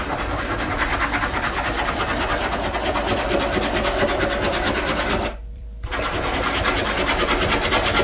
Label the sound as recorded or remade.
remade